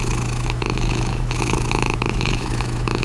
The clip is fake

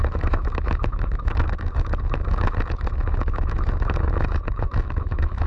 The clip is fake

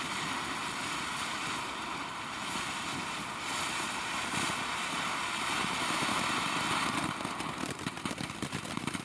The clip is real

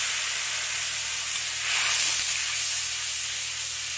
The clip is real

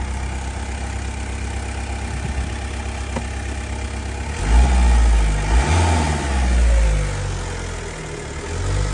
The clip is real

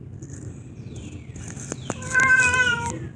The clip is real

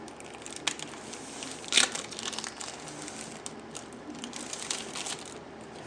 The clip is real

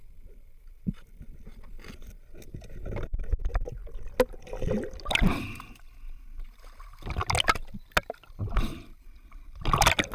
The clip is real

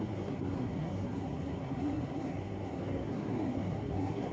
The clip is fake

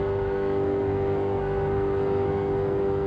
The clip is fake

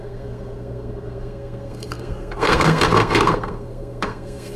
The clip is fake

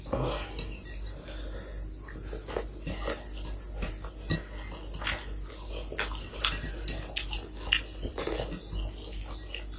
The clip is real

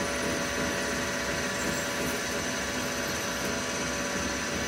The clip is real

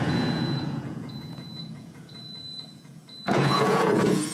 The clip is fake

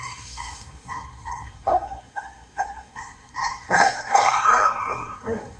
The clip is fake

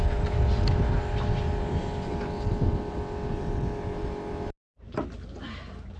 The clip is real